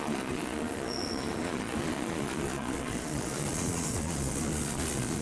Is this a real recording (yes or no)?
no